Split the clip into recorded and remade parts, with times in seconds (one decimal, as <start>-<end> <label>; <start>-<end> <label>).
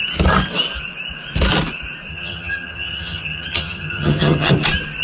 0.0-2.1 recorded; 2.1-4.5 remade; 4.5-5.0 recorded